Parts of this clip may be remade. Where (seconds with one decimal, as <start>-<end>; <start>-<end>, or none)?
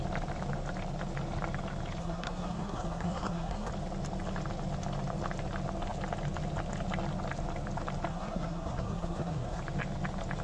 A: 2.0-3.7; 8.1-9.6